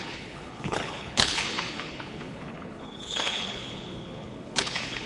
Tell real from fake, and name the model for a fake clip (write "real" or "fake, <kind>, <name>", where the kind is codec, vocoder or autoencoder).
fake, codec, HILCodec